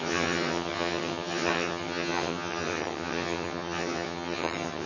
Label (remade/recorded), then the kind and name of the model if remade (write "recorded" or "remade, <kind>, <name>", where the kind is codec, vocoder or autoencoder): remade, vocoder, HiFi-GAN